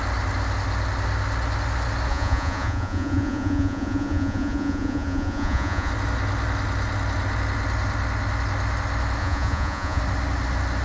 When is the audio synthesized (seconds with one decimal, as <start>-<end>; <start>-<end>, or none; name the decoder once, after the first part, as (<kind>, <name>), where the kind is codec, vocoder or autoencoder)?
2.1-5.9 (vocoder, Vocos); 9.2-10.0